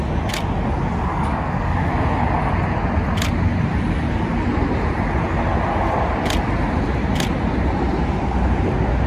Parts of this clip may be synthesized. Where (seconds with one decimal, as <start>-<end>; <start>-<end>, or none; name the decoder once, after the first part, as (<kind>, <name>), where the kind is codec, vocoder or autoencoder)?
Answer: 1.1-2.0 (codec, DAC)